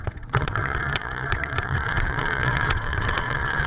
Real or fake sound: fake